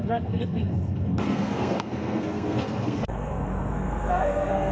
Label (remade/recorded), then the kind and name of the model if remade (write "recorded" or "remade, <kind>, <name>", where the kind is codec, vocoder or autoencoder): remade, codec, SNAC